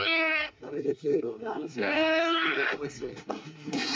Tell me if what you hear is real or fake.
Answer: fake